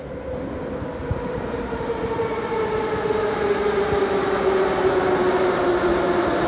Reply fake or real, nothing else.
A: real